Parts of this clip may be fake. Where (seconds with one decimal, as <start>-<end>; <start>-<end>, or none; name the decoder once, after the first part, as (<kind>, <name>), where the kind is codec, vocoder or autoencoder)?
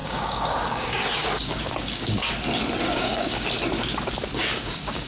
0.0-2.3 (codec, DAC); 2.8-3.5; 4.5-5.1